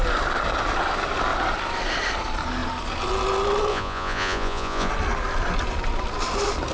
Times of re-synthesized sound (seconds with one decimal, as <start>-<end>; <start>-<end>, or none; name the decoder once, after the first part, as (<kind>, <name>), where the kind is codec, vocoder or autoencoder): 3.7-4.9 (vocoder, Vocos)